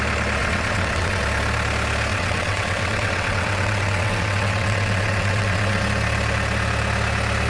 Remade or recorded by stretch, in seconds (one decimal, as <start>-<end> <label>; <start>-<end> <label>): 0.0-0.4 recorded; 0.4-1.2 remade; 1.2-2.1 recorded; 2.1-5.8 remade; 5.8-7.5 recorded

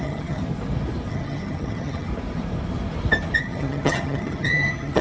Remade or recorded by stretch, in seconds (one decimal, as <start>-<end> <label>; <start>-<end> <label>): 0.0-0.4 remade; 0.4-1.1 recorded; 1.1-2.1 remade; 2.1-3.4 recorded; 3.4-5.0 remade

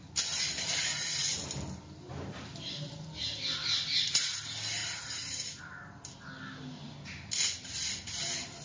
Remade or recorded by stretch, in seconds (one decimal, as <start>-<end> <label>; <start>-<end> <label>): 0.0-4.8 recorded; 4.8-5.6 remade; 5.6-8.6 recorded

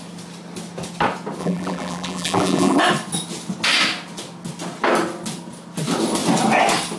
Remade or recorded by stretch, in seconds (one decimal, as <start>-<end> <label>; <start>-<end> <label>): 0.0-1.4 recorded; 1.4-2.8 remade; 2.8-7.0 recorded

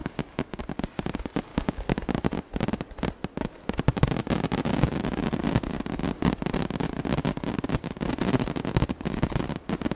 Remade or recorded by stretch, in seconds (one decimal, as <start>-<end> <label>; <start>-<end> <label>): 0.0-0.6 remade; 0.6-1.5 recorded; 1.5-2.2 remade; 2.2-10.0 recorded

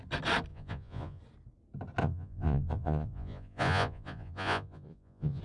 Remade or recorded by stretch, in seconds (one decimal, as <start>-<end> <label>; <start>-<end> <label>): 0.0-0.5 recorded; 0.5-1.2 remade; 1.2-2.0 recorded; 2.0-5.4 remade